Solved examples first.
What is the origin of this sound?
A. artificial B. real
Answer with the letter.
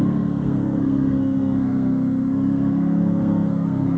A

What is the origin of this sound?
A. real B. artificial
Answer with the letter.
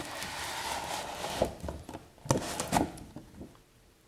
A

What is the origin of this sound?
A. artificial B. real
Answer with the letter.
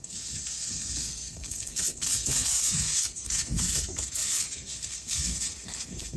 A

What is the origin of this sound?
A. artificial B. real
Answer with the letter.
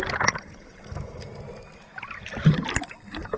B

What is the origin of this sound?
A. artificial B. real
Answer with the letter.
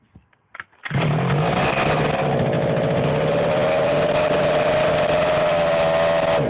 B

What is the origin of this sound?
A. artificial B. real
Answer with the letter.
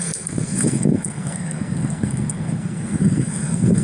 A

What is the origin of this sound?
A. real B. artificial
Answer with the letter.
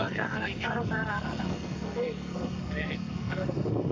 B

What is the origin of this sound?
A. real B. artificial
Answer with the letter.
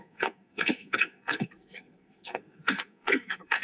B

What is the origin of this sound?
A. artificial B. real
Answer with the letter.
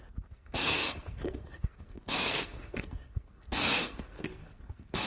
A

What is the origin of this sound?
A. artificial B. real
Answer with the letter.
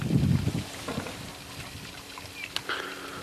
B